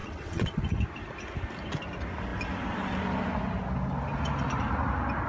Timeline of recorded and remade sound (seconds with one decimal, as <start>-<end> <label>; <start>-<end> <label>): 0.0-0.6 remade; 0.6-5.3 recorded